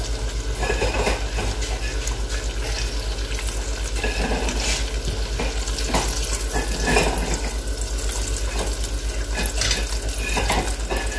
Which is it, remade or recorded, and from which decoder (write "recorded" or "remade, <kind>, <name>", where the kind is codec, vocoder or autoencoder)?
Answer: recorded